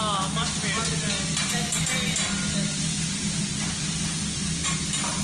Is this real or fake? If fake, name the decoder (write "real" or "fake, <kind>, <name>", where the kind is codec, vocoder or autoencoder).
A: real